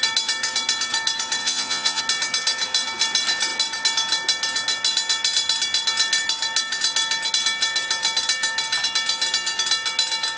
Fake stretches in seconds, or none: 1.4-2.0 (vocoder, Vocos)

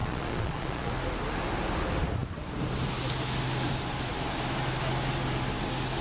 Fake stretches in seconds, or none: 0.0-0.9 (vocoder, Vocos)

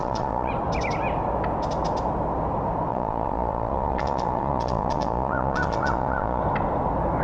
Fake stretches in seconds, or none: 0.0-0.5 (vocoder, Vocos); 2.9-6.4

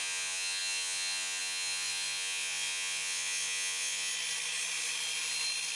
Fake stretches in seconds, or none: 0.0-4.1 (vocoder, Vocos)

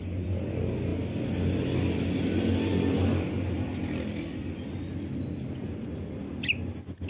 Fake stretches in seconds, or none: none

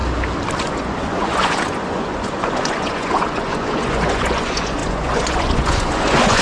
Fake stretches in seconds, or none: 0.6-6.4 (vocoder, Vocos)

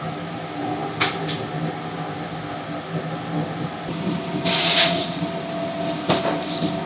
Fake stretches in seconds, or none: 4.6-5.2 (vocoder, Vocos)